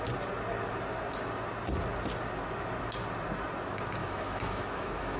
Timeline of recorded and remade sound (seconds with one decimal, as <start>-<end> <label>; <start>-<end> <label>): 0.0-4.0 recorded; 4.0-5.2 remade